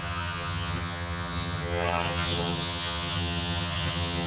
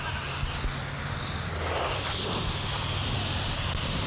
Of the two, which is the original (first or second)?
second